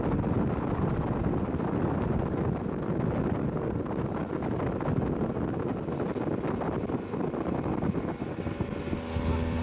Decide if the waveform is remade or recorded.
recorded